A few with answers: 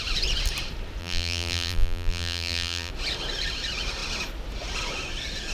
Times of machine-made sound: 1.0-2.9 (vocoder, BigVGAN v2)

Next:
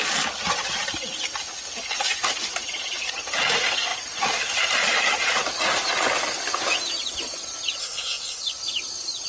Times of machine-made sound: 7.8-8.4 (codec, SNAC)

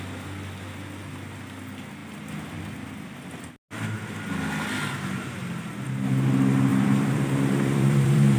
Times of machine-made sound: 6.7-8.4 (vocoder, BigVGAN v2)

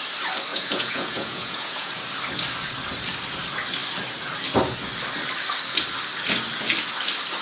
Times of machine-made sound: 0.5-1.9 (vocoder, Vocos)

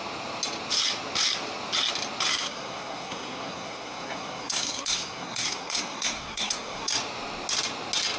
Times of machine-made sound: 2.3-6.9 (codec, SNAC)

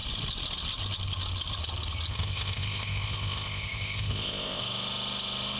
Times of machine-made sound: 2.1-4.6 (codec, ZipCodec)